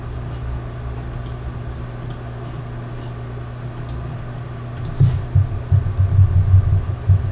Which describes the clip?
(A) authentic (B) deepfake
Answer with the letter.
A